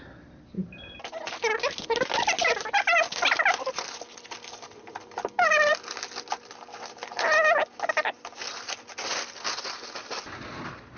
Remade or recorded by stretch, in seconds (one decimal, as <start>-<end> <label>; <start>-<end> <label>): 0.0-11.0 recorded